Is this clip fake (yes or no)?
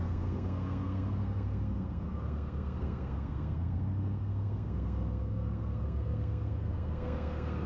yes